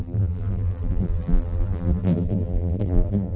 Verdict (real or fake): fake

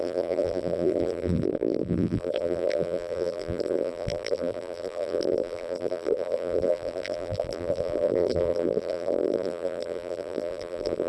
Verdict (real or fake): fake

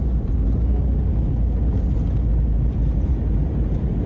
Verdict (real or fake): real